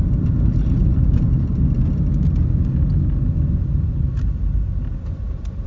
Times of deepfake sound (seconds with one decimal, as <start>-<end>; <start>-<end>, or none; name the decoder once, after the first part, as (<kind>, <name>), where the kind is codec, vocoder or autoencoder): 0.0-1.5 (vocoder, BigVGAN v2); 4.9-5.7